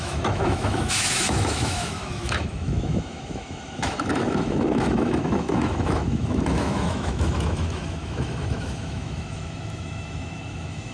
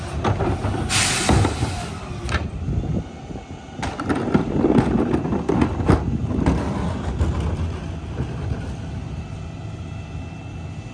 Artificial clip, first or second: first